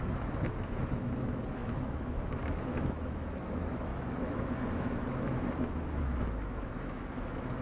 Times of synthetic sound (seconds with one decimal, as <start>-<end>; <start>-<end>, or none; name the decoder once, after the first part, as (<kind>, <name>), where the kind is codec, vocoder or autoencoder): 0.0-7.6 (autoencoder, DAC-VAE)